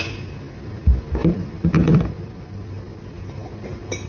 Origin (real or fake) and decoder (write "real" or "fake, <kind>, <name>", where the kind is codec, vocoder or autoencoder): fake, vocoder, BigVGAN v2